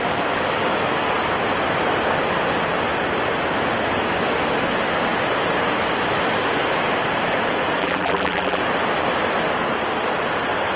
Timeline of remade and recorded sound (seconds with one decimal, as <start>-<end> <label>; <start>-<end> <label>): 0.0-7.8 recorded; 7.8-8.6 remade; 8.6-10.8 recorded